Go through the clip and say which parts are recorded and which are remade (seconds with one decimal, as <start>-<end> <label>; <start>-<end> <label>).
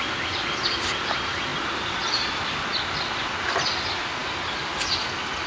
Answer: 0.0-5.5 recorded